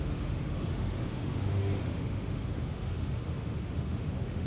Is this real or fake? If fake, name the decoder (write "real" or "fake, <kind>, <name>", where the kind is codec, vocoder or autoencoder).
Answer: fake, autoencoder, DAC-VAE